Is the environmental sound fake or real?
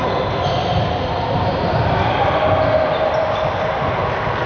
fake